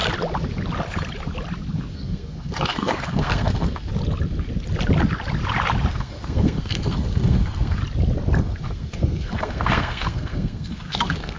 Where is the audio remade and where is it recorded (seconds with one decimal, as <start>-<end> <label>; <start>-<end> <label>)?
0.0-1.9 recorded; 1.9-3.9 remade; 3.9-5.9 recorded; 5.9-7.8 remade; 7.8-8.4 recorded; 8.4-11.4 remade

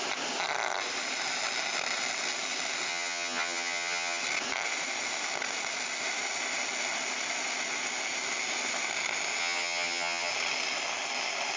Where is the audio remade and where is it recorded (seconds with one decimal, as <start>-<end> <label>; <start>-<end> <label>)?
0.0-2.9 recorded; 2.9-4.2 remade; 4.2-9.4 recorded; 9.4-10.3 remade; 10.3-11.6 recorded

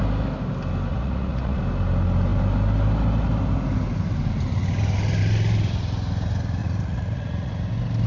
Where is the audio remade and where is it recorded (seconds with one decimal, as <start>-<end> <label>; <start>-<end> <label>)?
0.0-0.9 recorded; 0.9-1.6 remade; 1.6-6.6 recorded; 6.6-7.5 remade; 7.5-8.1 recorded

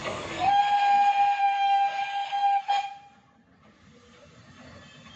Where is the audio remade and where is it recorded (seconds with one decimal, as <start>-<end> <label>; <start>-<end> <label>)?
0.0-0.6 remade; 0.6-1.4 recorded; 1.4-2.7 remade; 2.7-5.2 recorded